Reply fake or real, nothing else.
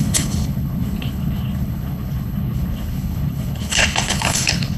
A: fake